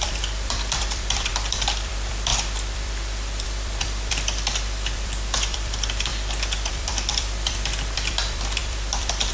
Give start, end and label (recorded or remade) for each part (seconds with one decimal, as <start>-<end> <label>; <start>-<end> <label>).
0.0-6.1 remade; 6.1-6.7 recorded; 6.7-9.3 remade